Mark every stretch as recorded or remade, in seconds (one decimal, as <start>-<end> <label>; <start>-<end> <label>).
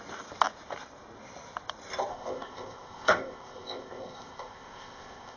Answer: 0.0-2.1 recorded; 2.1-5.4 remade